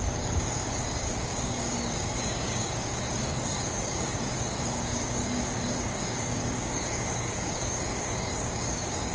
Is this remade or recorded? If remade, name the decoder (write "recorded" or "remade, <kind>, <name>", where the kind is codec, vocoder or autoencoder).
remade, codec, DAC